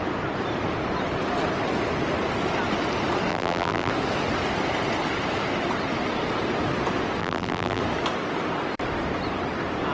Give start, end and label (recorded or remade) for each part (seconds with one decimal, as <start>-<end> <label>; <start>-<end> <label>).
0.0-3.3 recorded; 3.3-3.9 remade; 3.9-7.2 recorded; 7.2-7.8 remade; 7.8-9.9 recorded